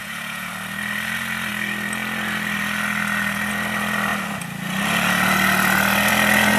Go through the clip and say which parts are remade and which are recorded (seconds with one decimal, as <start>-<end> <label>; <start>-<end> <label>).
0.0-0.5 remade; 0.5-6.6 recorded